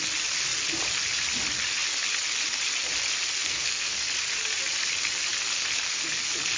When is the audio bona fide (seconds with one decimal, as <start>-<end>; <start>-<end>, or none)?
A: 0.0-3.4; 4.0-6.6